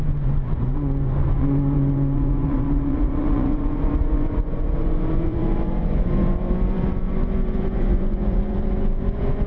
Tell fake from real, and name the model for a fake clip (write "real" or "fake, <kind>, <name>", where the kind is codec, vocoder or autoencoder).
fake, vocoder, Vocos